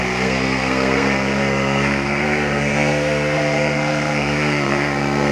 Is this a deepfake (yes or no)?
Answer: yes